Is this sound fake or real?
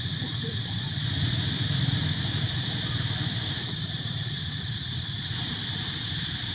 fake